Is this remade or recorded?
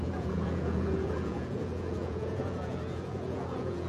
remade